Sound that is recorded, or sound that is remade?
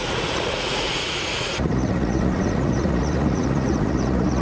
remade